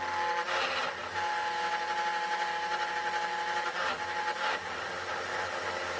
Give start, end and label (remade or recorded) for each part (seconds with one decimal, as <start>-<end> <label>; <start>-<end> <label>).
0.0-6.0 recorded